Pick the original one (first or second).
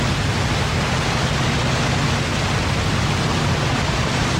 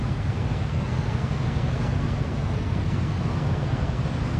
first